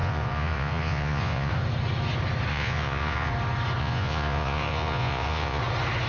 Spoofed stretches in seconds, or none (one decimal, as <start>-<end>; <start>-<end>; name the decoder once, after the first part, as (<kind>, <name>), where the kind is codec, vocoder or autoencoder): 0.0-1.5 (vocoder, Vocos); 2.5-3.3; 3.8-5.6